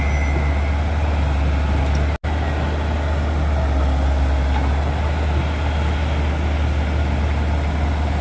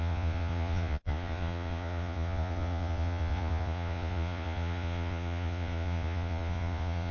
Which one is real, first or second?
first